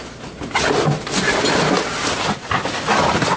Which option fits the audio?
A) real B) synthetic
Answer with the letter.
A